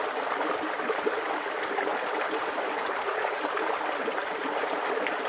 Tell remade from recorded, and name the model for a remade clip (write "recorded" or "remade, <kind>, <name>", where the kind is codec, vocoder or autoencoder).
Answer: recorded